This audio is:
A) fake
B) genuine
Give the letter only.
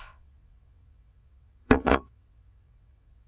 A